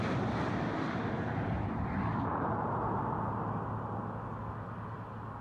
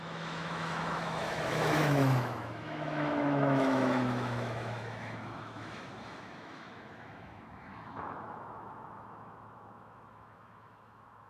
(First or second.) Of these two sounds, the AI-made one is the second